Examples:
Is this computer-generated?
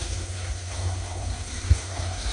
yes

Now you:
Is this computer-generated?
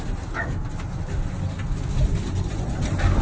no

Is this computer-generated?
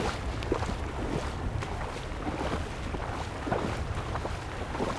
no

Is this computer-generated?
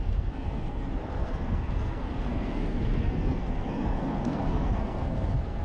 yes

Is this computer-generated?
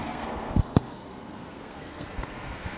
yes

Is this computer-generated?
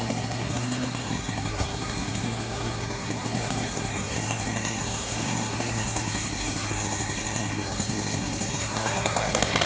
yes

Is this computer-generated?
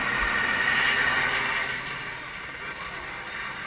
no